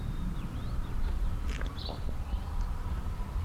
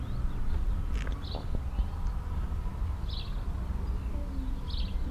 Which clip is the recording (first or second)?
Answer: second